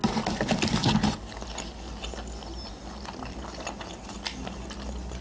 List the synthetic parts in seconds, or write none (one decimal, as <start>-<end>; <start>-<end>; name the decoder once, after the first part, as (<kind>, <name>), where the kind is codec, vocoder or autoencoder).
none